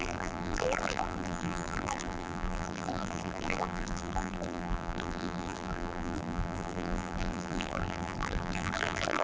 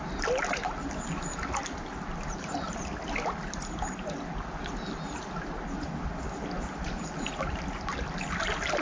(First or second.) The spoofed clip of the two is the first